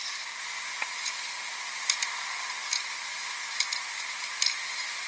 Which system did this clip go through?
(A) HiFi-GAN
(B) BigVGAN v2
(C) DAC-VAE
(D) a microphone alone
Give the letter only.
D